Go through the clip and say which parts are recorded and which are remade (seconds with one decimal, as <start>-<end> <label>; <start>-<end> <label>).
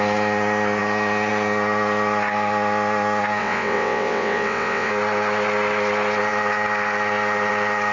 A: 0.0-3.4 recorded; 3.4-4.9 remade; 4.9-7.9 recorded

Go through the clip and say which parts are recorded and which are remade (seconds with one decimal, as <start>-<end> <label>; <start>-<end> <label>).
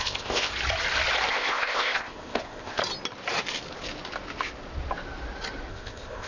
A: 0.0-0.5 remade; 0.5-1.3 recorded; 1.3-2.8 remade; 2.8-5.7 recorded; 5.7-6.3 remade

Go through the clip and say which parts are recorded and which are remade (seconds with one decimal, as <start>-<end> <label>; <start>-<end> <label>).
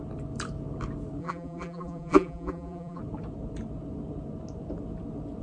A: 0.0-1.2 recorded; 1.2-3.0 remade; 3.0-5.4 recorded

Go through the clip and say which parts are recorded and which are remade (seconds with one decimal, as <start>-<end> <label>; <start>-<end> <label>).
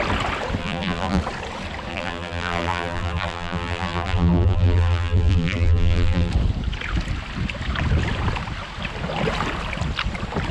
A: 0.0-0.6 recorded; 0.6-1.2 remade; 1.2-1.9 recorded; 1.9-6.3 remade; 6.3-10.5 recorded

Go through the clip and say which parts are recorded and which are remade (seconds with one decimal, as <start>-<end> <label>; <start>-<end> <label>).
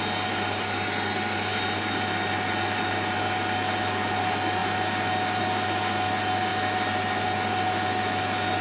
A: 0.0-8.6 recorded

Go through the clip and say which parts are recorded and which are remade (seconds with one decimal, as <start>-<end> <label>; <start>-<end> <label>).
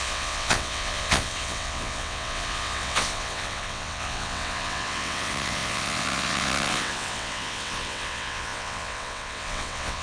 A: 0.0-10.0 remade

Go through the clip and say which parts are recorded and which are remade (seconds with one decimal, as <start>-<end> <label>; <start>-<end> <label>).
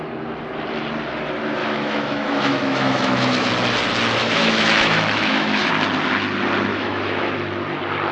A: 0.0-1.6 recorded; 1.6-3.5 remade; 3.5-4.2 recorded; 4.2-5.7 remade; 5.7-6.7 recorded; 6.7-7.3 remade; 7.3-8.1 recorded